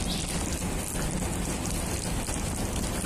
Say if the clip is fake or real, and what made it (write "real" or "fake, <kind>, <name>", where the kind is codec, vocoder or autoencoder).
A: real